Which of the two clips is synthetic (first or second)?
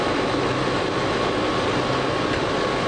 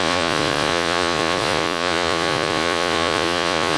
second